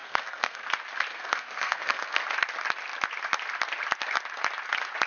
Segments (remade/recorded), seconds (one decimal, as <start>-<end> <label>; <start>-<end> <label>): 0.0-0.7 remade; 0.7-1.1 recorded; 1.1-2.2 remade; 2.2-5.1 recorded